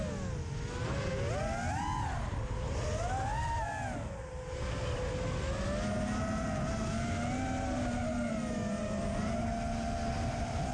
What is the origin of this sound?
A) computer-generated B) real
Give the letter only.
B